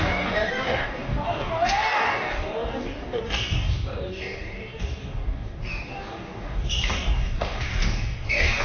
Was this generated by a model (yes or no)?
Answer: yes